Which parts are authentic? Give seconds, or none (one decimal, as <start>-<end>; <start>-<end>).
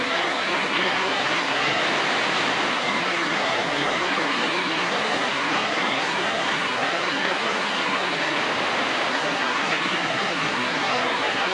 1.8-2.7; 8.4-9.1